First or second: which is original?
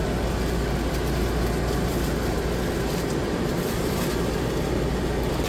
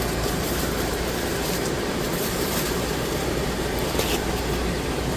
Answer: first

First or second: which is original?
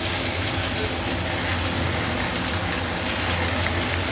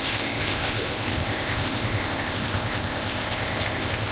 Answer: first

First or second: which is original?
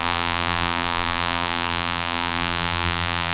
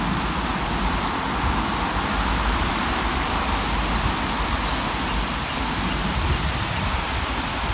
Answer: second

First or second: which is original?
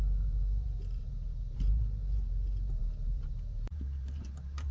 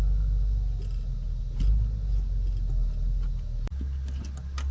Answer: second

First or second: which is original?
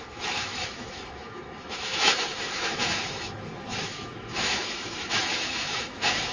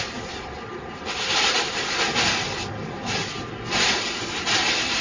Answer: second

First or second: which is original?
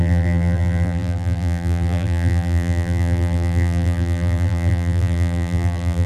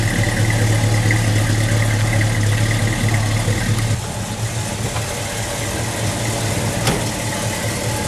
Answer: second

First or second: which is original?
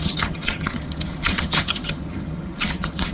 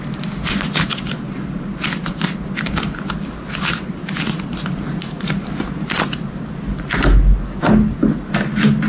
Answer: second